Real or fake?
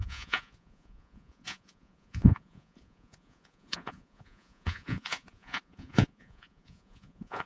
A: fake